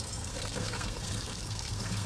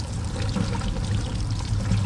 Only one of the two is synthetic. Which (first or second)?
first